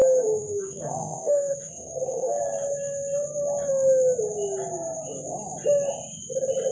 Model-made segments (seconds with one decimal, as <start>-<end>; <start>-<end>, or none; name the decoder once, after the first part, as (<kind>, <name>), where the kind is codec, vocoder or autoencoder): 0.0-2.4 (codec, SNAC)